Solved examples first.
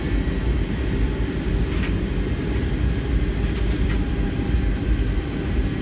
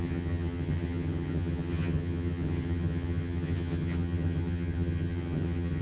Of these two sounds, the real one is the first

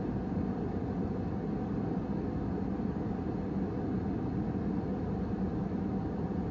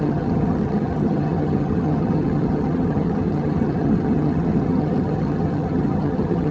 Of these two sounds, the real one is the first